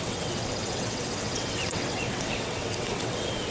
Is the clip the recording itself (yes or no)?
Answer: no